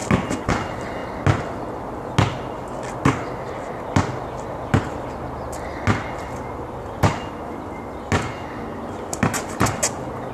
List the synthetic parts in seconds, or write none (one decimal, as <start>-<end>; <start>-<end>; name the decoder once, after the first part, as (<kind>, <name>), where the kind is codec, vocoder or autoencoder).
none